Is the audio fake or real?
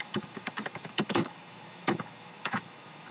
fake